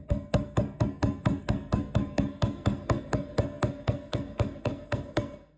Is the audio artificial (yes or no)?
yes